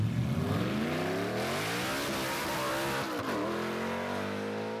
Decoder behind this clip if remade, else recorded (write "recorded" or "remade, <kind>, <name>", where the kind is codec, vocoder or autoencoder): recorded